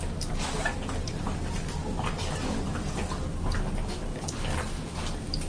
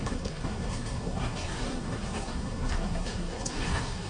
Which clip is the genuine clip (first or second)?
first